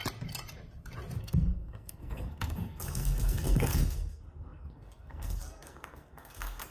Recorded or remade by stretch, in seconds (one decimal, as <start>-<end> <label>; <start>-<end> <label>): 0.0-1.2 recorded; 1.2-6.7 remade

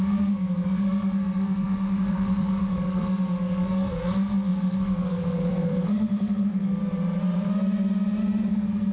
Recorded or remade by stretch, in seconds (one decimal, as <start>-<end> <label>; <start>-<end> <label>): 0.0-6.8 remade; 6.8-8.5 recorded; 8.5-8.9 remade

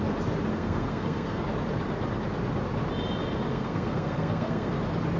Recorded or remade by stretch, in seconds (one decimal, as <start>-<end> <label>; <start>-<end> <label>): 0.0-0.5 recorded; 0.5-1.4 remade; 1.4-3.5 recorded; 3.5-4.7 remade; 4.7-5.2 recorded